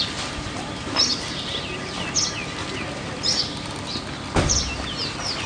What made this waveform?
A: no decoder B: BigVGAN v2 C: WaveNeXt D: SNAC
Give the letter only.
A